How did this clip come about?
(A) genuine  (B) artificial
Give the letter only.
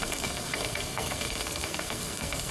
B